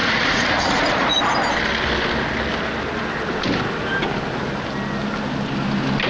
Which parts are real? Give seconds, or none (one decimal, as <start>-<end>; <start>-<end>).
1.2-6.1